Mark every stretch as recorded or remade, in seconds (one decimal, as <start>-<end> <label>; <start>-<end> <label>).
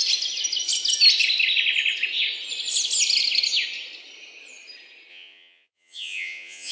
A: 0.0-5.1 recorded; 5.1-6.7 remade